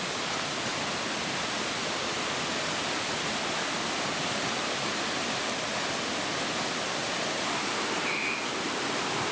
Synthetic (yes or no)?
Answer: no